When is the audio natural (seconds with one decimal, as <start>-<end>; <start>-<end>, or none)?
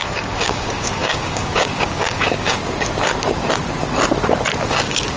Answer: 2.6-4.7